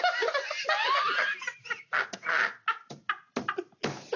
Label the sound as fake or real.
real